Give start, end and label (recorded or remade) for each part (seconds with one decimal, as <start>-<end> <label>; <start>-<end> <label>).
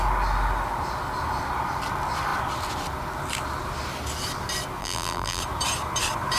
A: 0.0-4.8 recorded; 4.8-5.4 remade; 5.4-6.4 recorded